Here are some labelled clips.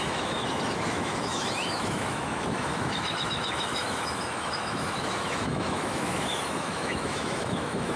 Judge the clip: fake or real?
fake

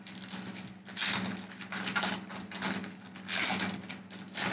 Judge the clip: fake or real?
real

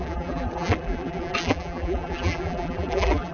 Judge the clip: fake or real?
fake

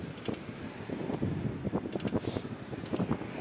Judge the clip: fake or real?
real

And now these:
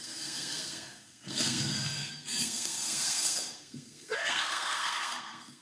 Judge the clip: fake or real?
fake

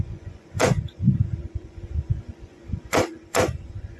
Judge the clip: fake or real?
fake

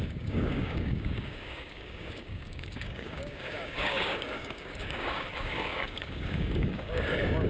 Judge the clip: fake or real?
fake